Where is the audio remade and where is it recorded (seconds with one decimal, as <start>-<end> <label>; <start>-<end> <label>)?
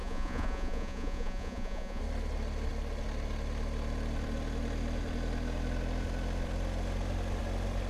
0.0-2.0 remade; 2.0-7.9 recorded